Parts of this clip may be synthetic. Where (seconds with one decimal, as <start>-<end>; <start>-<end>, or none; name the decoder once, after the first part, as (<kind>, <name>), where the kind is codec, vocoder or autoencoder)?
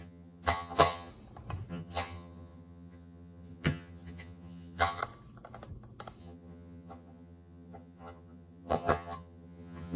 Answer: 0.0-1.1 (vocoder, HiFi-GAN); 1.7-5.0; 6.2-10.0